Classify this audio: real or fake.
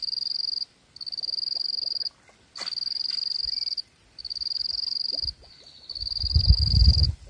real